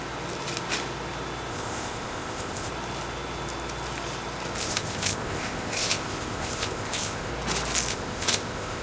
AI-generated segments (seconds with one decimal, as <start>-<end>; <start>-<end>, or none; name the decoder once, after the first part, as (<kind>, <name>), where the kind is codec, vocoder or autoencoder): 1.5-2.7 (codec, ZipCodec); 4.6-7.3; 7.9-8.8